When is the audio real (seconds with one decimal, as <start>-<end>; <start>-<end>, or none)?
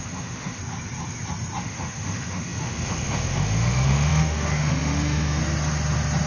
0.6-1.6; 5.4-6.3